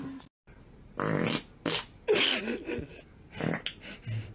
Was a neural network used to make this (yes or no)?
no